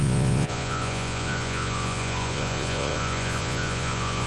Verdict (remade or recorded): remade